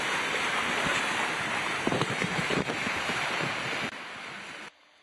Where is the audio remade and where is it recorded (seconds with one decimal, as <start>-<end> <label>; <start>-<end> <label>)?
0.0-0.9 recorded; 0.9-3.9 remade; 3.9-5.0 recorded